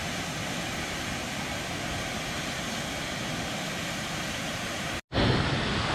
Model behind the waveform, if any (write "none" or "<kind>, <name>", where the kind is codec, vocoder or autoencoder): none